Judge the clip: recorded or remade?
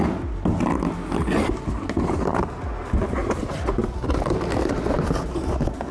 recorded